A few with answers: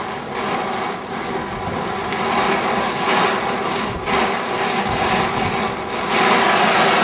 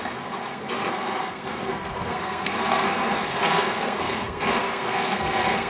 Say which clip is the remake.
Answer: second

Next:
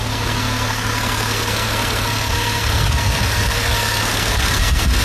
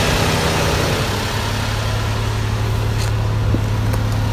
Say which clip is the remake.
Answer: first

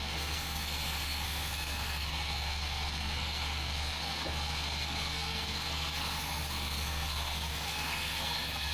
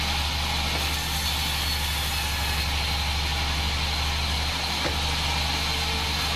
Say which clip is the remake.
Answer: first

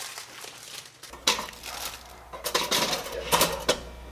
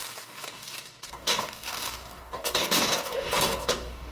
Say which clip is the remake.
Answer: second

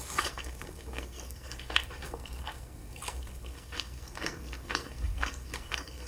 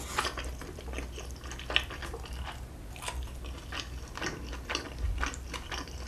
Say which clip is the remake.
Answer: first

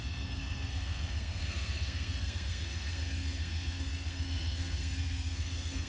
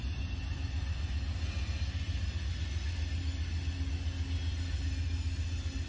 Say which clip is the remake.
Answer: first